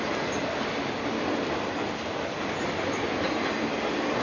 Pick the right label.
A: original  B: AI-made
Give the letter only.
A